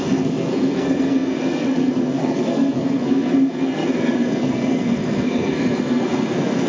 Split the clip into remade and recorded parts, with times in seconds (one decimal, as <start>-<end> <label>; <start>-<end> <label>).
0.0-6.7 remade